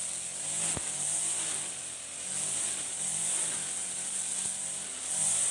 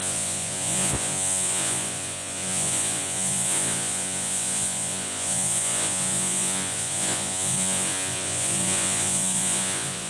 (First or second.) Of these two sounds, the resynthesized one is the second